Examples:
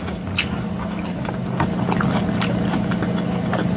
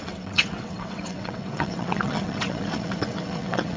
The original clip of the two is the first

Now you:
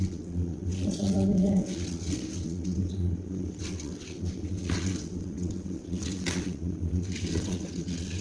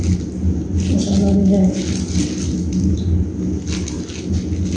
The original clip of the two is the second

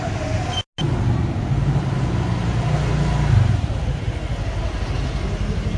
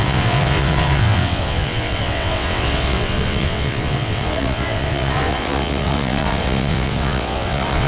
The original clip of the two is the first